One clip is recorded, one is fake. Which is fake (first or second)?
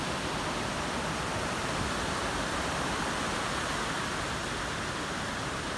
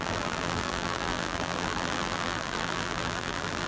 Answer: second